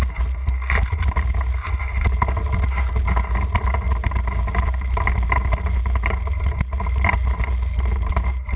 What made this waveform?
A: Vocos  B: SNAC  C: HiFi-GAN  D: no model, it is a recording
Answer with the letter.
D